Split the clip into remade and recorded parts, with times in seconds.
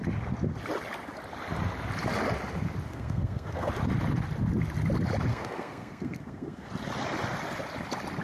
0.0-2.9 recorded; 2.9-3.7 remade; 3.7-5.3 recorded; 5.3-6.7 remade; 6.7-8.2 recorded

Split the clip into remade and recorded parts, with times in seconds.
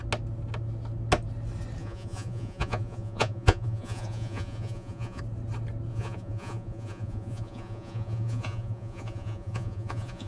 0.0-1.8 recorded; 1.8-5.2 remade; 5.2-5.9 recorded; 5.9-10.3 remade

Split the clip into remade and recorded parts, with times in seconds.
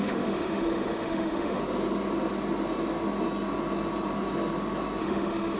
0.0-1.6 remade; 1.6-5.0 recorded; 5.0-5.6 remade